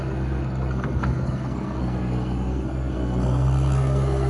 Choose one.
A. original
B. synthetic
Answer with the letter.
B